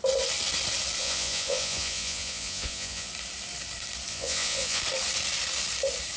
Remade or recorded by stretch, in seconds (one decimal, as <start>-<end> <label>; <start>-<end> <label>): 0.0-1.0 recorded; 1.0-3.1 remade; 3.1-4.1 recorded; 4.1-4.8 remade; 4.8-6.2 recorded